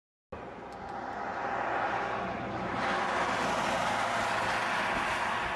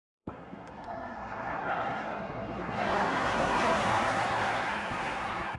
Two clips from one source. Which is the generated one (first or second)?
second